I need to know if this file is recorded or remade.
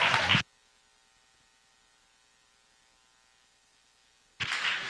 recorded